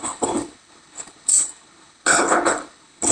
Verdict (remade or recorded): remade